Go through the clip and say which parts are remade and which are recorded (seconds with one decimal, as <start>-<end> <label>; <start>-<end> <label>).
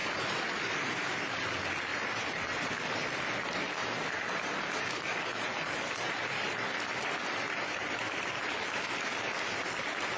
0.0-1.0 remade; 1.0-1.9 recorded; 1.9-2.7 remade; 2.7-3.8 recorded; 3.8-6.5 remade; 6.5-10.2 recorded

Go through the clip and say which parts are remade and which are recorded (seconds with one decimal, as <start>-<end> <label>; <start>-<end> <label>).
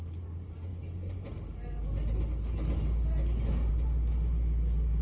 0.0-5.0 recorded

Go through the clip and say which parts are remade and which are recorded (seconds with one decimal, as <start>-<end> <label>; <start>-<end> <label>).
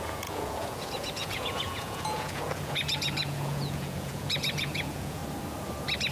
0.0-5.2 remade; 5.2-6.1 recorded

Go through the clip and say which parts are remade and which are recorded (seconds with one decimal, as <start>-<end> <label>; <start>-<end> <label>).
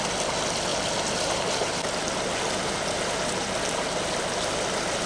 0.0-5.1 recorded